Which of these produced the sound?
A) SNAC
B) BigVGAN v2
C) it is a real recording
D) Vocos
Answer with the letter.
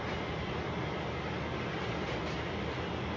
B